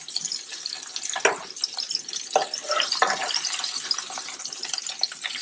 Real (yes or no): yes